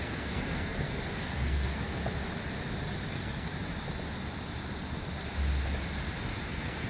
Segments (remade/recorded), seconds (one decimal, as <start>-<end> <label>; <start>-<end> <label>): 0.0-2.0 remade; 2.0-3.1 recorded; 3.1-3.5 remade; 3.5-6.5 recorded; 6.5-6.9 remade

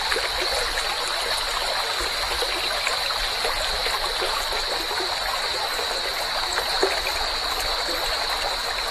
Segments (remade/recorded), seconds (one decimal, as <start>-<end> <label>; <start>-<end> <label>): 0.0-6.5 recorded; 6.5-7.2 remade; 7.2-8.9 recorded

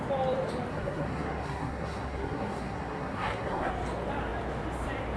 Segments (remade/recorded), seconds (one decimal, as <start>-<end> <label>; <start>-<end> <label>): 0.0-0.7 recorded; 0.7-3.7 remade; 3.7-5.2 recorded

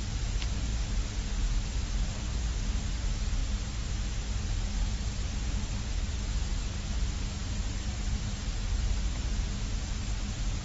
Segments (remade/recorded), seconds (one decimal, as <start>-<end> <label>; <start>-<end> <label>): 0.0-10.6 recorded

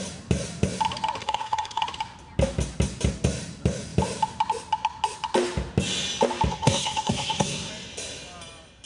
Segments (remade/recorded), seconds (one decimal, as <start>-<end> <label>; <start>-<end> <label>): 0.0-1.2 recorded; 1.2-1.8 remade; 1.8-6.5 recorded; 6.5-7.7 remade; 7.7-8.9 recorded

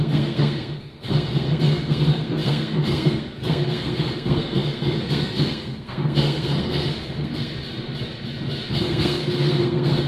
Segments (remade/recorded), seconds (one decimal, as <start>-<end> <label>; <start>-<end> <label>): 0.0-7.5 remade; 7.5-8.7 recorded; 8.7-10.1 remade